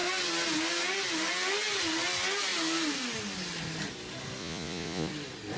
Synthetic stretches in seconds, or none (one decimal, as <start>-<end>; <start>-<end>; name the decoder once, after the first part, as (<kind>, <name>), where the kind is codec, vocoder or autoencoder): 4.4-5.1 (vocoder, Vocos)